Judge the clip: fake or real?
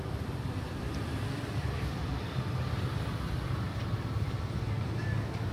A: fake